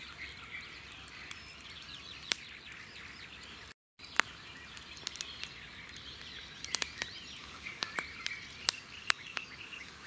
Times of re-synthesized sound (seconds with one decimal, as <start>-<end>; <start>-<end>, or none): 7.4-7.9; 9.0-10.1